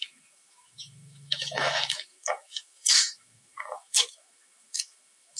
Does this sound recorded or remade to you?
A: remade